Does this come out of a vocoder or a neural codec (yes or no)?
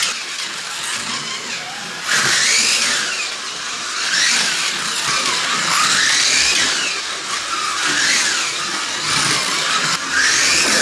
no